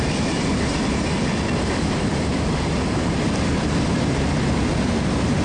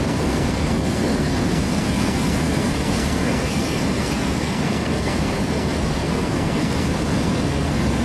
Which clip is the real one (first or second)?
first